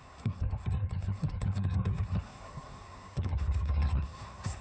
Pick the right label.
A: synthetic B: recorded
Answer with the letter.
A